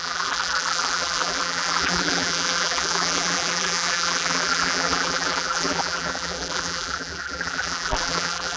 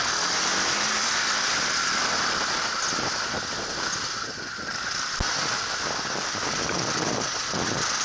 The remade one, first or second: first